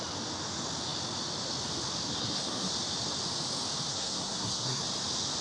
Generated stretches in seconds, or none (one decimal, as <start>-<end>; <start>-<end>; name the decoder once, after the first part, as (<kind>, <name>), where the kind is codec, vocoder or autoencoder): 2.2-2.7 (codec, SNAC); 3.9-4.8